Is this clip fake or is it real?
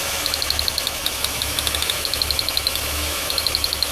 fake